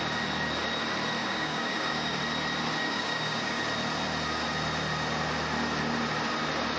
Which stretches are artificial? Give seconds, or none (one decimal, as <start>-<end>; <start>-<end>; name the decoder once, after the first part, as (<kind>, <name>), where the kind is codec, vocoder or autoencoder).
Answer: 1.2-2.2 (codec, DAC); 2.8-3.6